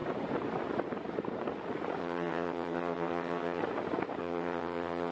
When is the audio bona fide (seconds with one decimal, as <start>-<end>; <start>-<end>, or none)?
0.0-2.0; 3.6-4.2